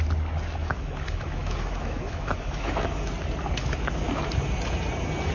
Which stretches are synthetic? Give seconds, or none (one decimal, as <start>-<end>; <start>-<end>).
0.6-3.1; 3.6-4.2